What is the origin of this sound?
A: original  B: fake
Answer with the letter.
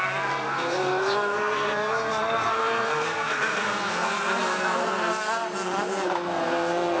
B